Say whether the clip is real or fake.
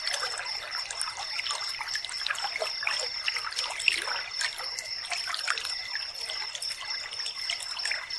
real